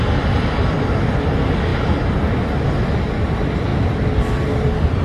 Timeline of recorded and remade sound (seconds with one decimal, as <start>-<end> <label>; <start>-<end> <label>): 0.0-5.0 recorded

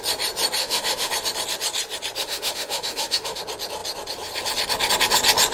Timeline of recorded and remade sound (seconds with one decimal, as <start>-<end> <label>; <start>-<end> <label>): 0.0-0.6 recorded; 0.6-1.1 remade; 1.1-2.2 recorded; 2.2-3.4 remade; 3.4-5.5 recorded

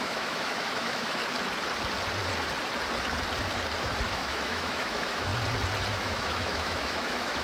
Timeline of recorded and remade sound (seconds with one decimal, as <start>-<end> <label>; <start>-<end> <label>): 0.0-1.2 remade; 1.2-4.1 recorded; 4.1-5.3 remade; 5.3-5.9 recorded; 5.9-7.4 remade